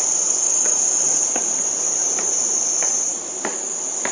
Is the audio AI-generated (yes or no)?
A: yes